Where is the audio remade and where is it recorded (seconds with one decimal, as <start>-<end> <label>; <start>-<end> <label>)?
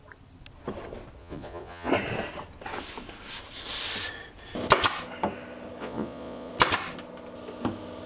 0.0-1.2 recorded; 1.2-1.9 remade; 1.9-5.8 recorded; 5.8-6.5 remade; 6.5-8.1 recorded